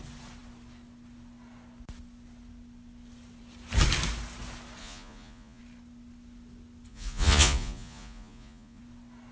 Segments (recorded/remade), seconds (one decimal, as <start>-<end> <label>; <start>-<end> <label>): 0.0-4.8 recorded; 4.8-5.6 remade; 5.6-6.9 recorded; 6.9-8.8 remade; 8.8-9.3 recorded